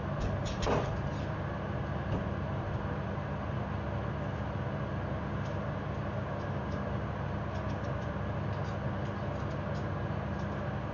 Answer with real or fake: real